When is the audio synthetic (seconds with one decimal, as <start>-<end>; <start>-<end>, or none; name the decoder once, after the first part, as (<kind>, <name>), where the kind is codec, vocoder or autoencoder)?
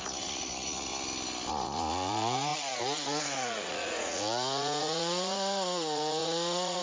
0.0-0.9 (vocoder, Vocos); 1.5-6.8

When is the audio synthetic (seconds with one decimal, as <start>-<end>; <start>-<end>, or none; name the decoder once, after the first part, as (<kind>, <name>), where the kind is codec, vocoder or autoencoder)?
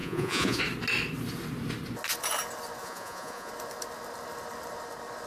0.0-0.6 (vocoder, Vocos); 2.8-3.5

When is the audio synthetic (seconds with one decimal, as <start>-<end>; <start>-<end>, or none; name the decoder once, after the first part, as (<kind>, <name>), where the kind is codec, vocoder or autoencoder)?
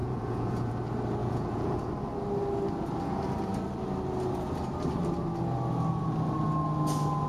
0.0-0.7 (vocoder, Vocos); 1.2-1.9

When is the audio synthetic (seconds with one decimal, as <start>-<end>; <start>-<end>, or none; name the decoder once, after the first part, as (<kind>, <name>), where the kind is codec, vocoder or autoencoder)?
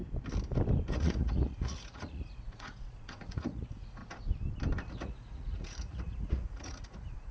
0.9-4.0 (vocoder, Vocos); 4.9-7.3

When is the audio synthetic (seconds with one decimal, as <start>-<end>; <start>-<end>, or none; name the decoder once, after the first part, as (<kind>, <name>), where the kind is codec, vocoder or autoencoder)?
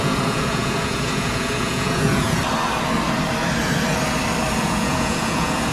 0.0-2.4 (vocoder, Vocos); 4.6-5.7